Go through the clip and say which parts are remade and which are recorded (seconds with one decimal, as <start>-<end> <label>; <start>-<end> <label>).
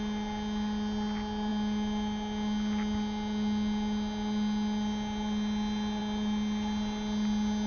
0.0-7.7 recorded